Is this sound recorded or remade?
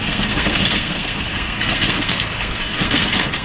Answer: remade